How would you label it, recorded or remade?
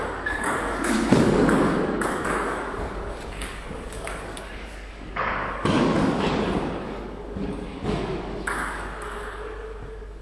remade